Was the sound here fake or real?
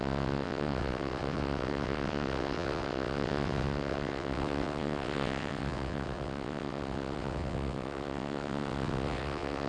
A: fake